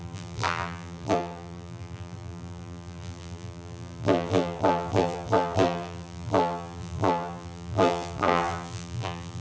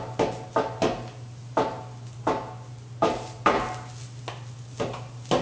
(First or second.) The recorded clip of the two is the second